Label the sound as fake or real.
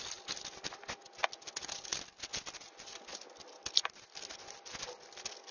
real